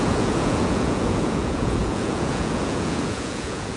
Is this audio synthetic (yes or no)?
yes